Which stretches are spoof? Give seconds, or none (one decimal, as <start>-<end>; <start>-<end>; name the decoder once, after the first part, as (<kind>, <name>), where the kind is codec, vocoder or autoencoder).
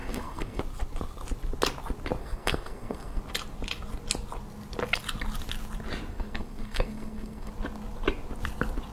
0.0-0.6 (codec, SNAC); 2.2-3.2; 6.1-7.5